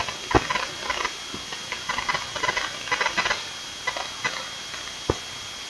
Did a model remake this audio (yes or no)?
no